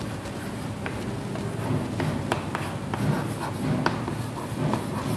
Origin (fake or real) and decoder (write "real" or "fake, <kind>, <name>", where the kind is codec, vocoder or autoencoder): real